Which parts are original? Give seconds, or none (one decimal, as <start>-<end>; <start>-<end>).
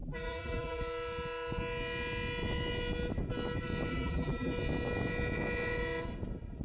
0.8-3.9; 4.5-6.6